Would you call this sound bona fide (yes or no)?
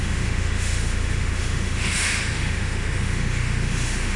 no